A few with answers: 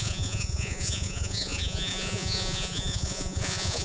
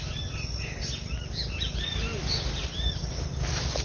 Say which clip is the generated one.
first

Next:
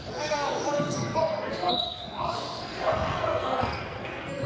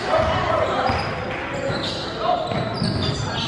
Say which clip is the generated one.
first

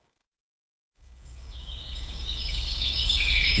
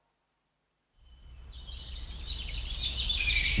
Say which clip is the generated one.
first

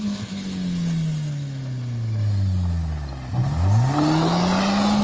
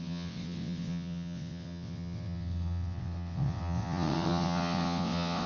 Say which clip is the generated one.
second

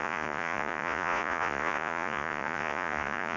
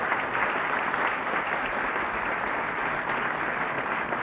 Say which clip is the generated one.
first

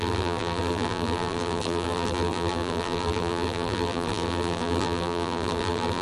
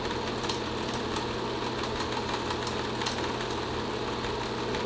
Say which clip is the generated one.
first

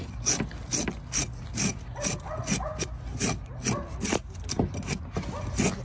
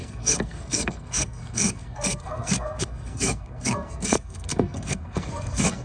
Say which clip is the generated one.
second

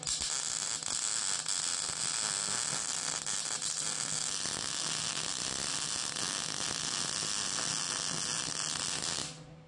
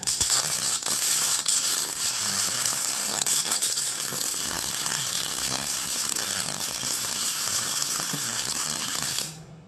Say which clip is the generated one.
second